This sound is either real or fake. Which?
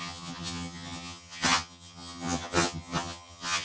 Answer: fake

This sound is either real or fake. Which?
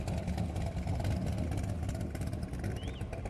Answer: real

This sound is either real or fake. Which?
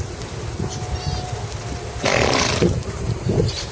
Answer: real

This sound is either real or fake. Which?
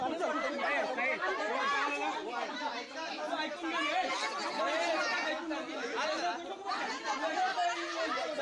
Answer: real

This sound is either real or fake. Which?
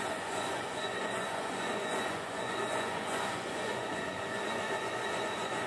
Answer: fake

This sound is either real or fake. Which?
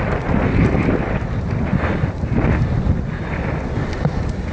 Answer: real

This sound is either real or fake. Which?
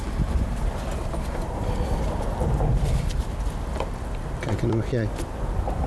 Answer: fake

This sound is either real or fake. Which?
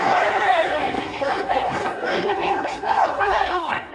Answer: fake